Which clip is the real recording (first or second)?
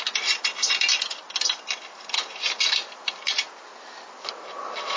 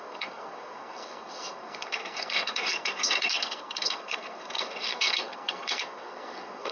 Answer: first